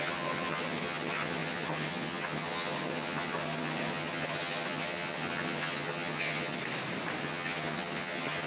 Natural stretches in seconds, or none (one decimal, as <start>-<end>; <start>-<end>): 6.6-7.2